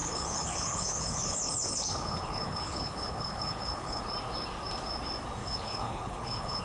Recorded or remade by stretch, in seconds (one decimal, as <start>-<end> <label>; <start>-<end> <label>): 0.0-4.0 remade; 4.0-5.4 recorded; 5.4-6.6 remade